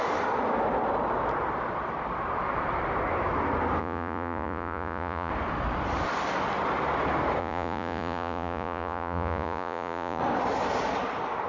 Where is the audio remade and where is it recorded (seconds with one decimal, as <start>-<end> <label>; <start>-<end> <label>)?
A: 0.0-3.8 recorded; 3.8-5.3 remade; 5.3-7.4 recorded; 7.4-10.2 remade; 10.2-11.5 recorded